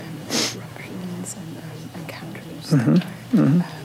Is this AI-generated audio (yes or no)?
no